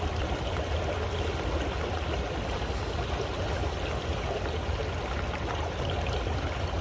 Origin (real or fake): real